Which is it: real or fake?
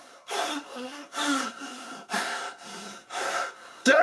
fake